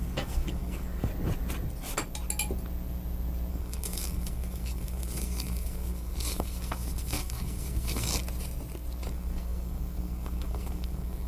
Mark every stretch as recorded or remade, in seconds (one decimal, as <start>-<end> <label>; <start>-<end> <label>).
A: 0.0-1.1 remade; 1.1-3.5 recorded; 3.5-8.1 remade; 8.1-9.1 recorded; 9.1-11.3 remade